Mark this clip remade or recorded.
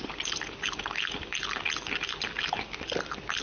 recorded